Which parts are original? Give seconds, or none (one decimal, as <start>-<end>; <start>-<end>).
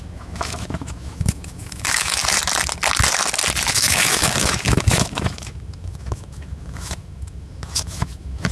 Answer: 2.2-3.7